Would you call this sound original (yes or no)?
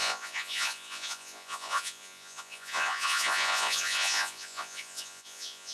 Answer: no